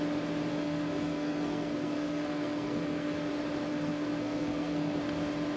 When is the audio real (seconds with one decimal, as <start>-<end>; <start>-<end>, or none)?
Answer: 0.0-0.5; 3.3-3.7; 5.0-5.6